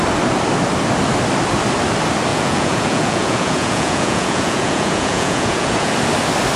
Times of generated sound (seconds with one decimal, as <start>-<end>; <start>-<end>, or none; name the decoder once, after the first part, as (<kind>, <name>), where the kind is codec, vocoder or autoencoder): 2.3-5.9 (vocoder, Vocos)

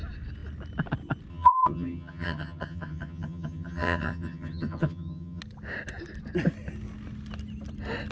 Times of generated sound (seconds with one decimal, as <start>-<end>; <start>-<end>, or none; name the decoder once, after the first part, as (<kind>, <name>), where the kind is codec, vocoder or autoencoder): 1.3-5.4 (vocoder, HiFi-GAN)

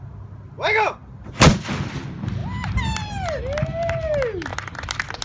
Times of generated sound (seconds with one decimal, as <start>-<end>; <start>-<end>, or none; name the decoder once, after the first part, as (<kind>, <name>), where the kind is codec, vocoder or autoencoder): none